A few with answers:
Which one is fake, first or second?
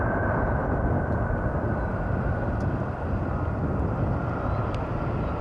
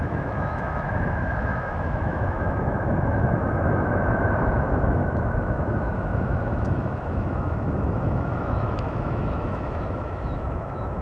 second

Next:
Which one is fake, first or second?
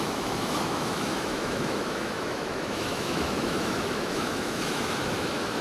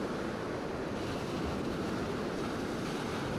first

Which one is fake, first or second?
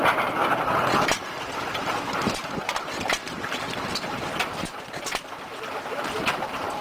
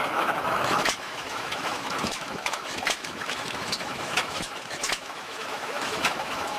second